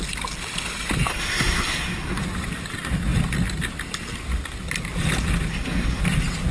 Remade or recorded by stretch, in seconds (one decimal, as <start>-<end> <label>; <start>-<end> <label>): 0.0-1.1 recorded; 1.1-2.2 remade; 2.2-5.5 recorded; 5.5-6.0 remade; 6.0-6.5 recorded